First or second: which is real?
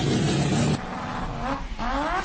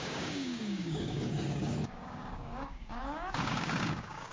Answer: first